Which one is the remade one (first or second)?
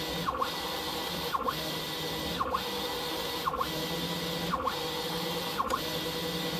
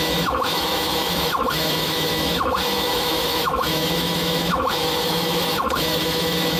second